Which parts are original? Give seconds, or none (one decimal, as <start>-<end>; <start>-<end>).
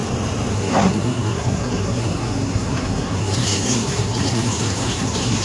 0.0-0.5